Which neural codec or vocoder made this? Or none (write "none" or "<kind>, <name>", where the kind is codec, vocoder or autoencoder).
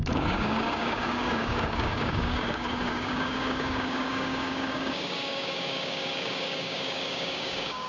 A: codec, DAC